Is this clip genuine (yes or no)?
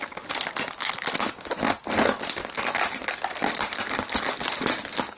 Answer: yes